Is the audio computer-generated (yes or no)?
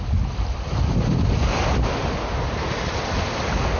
no